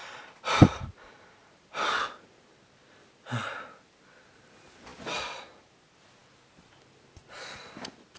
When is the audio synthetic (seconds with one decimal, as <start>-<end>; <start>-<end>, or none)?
0.0-1.6; 4.9-5.8